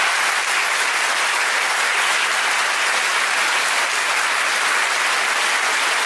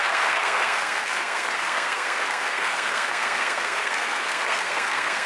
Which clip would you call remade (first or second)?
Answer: second